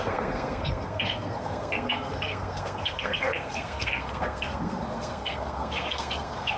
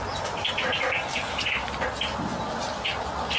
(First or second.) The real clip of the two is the second